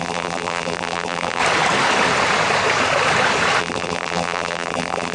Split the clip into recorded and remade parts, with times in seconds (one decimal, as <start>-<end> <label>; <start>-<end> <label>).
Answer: 0.0-1.4 remade; 1.4-3.6 recorded; 3.6-5.1 remade